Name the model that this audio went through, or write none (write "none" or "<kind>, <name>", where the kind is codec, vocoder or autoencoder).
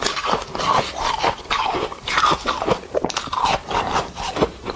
vocoder, BigVGAN v2